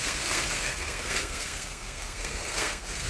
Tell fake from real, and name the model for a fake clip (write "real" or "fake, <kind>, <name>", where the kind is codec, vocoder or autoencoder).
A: fake, codec, SNAC